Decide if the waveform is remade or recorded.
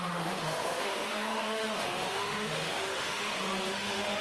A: remade